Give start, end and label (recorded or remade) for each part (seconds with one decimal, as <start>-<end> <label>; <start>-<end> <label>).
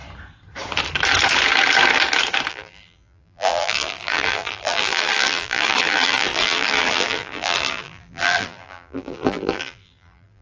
0.0-2.5 recorded; 2.5-10.4 remade